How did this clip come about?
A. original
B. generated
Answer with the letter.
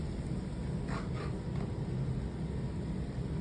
A